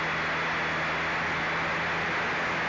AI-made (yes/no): no